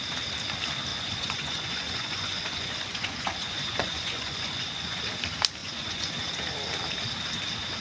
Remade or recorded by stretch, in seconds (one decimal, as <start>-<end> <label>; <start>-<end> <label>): 0.0-0.9 recorded; 0.9-5.0 remade; 5.0-5.6 recorded; 5.6-6.1 remade; 6.1-7.8 recorded